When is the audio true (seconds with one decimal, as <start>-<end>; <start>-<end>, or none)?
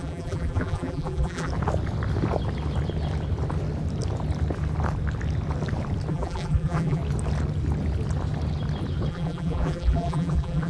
1.5-6.1; 7.0-9.1